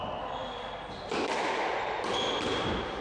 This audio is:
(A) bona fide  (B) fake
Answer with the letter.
A